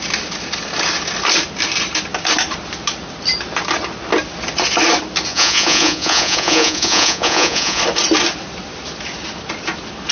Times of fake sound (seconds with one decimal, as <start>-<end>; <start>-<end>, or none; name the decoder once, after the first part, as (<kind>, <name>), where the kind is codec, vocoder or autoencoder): 5.3-7.8 (vocoder, Vocos)

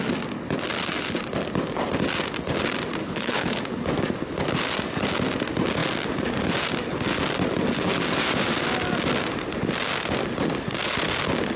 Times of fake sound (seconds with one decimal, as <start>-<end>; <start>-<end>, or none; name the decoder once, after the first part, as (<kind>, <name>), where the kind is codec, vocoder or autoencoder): 3.0-3.6 (codec, HILCodec)

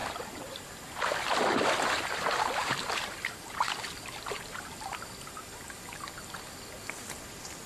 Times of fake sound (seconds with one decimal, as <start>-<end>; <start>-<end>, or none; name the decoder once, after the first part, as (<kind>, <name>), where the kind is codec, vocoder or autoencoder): 0.0-0.9 (vocoder, BigVGAN v2); 2.6-4.7

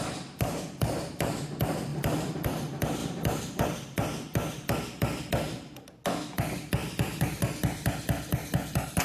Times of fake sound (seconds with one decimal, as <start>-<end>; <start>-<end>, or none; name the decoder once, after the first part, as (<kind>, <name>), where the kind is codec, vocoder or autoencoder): 1.9-2.5 (vocoder, BigVGAN v2); 6.8-9.0

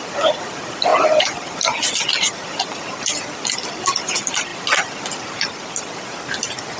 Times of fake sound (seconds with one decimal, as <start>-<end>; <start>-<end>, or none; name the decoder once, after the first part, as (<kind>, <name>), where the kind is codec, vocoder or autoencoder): none

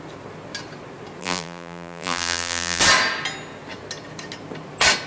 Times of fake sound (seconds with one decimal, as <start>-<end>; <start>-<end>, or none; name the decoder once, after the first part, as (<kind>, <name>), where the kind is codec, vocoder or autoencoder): 1.2-2.8 (vocoder, BigVGAN v2)

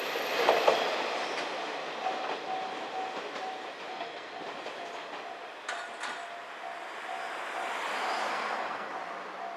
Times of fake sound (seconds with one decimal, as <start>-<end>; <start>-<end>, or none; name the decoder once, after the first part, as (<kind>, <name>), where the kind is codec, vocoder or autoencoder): 3.9-4.4 (codec, SNAC); 8.3-8.9

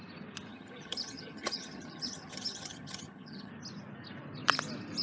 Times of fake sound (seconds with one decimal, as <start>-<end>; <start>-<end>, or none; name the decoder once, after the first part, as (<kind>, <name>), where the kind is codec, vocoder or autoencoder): 0.5-3.5 (vocoder, HiFi-GAN)